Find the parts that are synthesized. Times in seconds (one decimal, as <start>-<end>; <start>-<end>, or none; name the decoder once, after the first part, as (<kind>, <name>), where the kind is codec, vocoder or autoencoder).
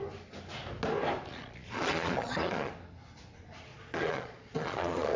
1.3-2.7 (vocoder, Vocos); 3.7-5.2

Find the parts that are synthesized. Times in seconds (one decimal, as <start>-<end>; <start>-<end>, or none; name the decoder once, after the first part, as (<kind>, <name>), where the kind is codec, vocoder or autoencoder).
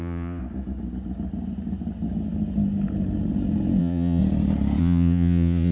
0.0-0.4 (vocoder, Vocos); 3.8-4.2; 4.8-5.7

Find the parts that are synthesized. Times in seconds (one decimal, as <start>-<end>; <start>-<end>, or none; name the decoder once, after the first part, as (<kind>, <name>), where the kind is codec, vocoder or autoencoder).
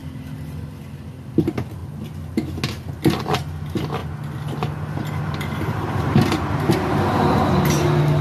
none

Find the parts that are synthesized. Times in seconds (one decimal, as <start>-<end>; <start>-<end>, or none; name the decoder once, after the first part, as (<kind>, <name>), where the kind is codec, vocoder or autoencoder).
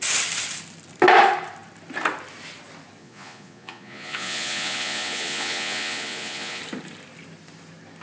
3.0-6.6 (vocoder, Vocos)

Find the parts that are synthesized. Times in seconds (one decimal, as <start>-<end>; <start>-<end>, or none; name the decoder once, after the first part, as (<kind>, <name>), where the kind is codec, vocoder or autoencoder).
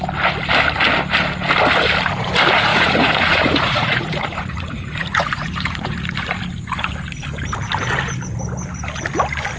2.7-6.4 (vocoder, Vocos)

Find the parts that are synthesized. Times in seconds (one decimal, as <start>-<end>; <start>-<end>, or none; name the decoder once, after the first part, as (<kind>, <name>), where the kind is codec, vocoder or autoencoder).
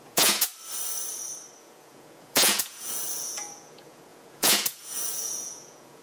0.0-0.5 (vocoder, Vocos); 1.6-6.0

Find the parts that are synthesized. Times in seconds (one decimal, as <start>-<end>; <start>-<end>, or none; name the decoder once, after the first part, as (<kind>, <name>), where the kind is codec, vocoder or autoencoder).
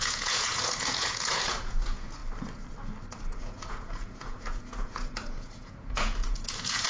0.0-2.2 (vocoder, Vocos); 3.4-6.9